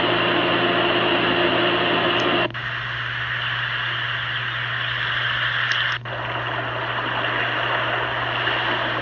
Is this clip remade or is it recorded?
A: recorded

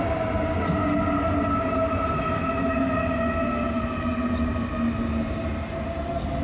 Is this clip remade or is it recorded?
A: recorded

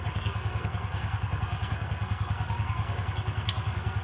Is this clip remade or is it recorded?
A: remade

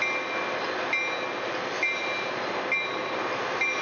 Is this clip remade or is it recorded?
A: recorded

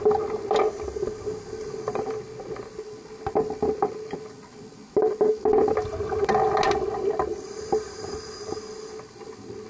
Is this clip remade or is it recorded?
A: recorded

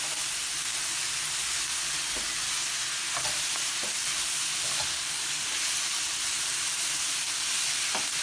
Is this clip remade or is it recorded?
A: recorded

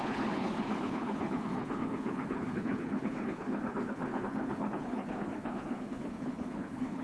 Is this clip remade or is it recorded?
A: remade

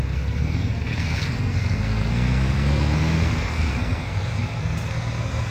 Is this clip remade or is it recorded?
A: remade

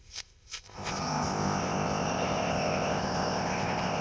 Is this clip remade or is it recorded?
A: remade